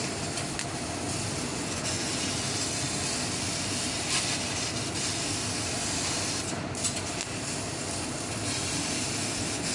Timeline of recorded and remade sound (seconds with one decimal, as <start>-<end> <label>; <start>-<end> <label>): 0.0-1.5 recorded; 1.5-2.1 remade; 2.1-9.7 recorded